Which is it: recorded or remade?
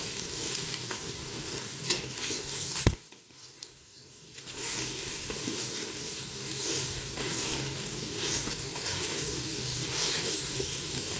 remade